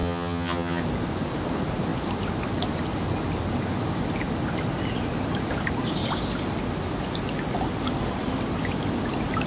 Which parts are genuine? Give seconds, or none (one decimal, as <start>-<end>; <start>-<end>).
0.8-9.5